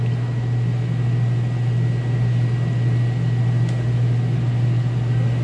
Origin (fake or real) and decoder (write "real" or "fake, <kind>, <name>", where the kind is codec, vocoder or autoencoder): real